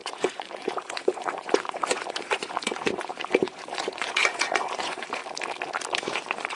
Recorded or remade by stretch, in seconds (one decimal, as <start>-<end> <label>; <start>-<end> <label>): 0.0-5.2 remade; 5.2-6.0 recorded; 6.0-6.5 remade